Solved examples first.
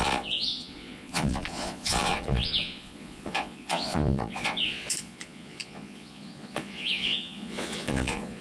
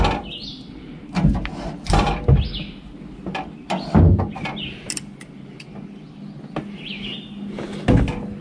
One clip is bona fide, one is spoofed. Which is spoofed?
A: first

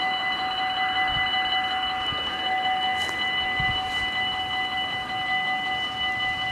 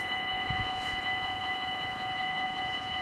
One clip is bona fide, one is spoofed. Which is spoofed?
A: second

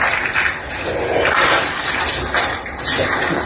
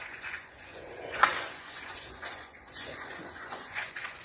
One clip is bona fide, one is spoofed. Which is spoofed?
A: second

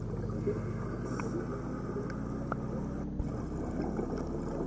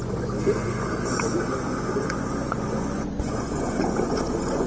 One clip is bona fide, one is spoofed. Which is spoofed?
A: second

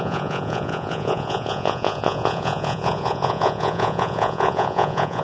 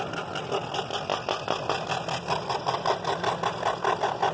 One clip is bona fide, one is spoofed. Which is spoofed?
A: first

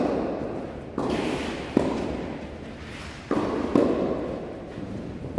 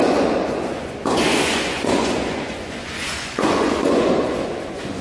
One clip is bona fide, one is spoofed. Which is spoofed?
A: second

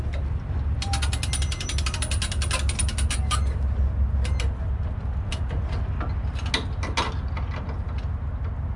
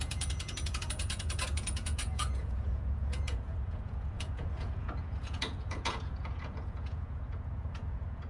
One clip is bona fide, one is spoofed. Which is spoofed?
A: second